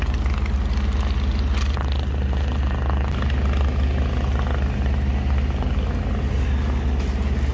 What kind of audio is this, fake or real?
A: real